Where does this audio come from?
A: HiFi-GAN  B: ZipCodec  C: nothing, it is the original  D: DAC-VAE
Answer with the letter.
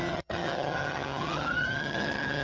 A